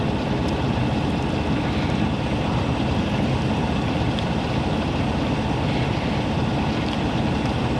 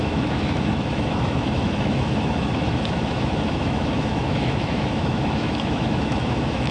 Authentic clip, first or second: first